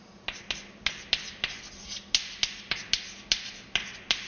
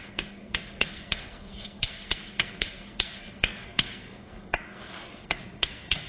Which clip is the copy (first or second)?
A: second